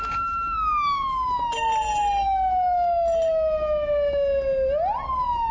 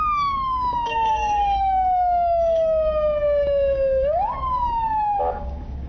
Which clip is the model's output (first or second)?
second